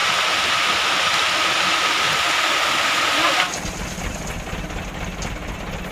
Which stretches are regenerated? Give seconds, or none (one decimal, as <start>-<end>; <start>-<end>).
none